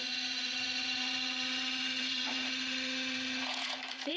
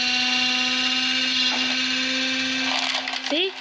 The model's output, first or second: first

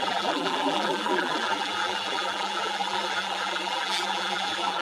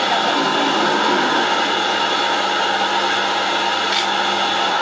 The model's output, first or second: first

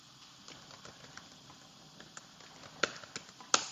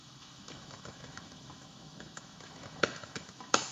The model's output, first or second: second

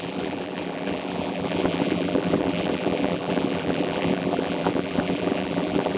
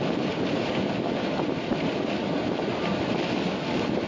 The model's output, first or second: first